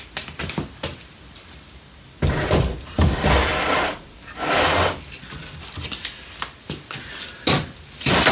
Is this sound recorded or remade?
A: recorded